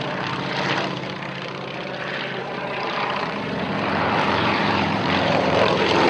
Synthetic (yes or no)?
yes